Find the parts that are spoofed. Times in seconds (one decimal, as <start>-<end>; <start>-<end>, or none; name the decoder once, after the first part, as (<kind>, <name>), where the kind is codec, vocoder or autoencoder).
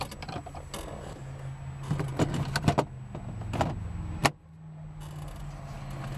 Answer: none